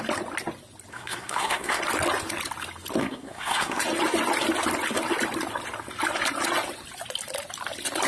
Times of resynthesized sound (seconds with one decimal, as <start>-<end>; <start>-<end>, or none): 0.9-1.8; 3.0-3.8